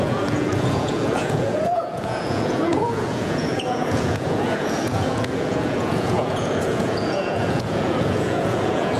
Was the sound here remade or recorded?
remade